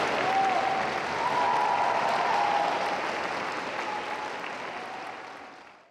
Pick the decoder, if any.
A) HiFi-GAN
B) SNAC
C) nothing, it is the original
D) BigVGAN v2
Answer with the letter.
C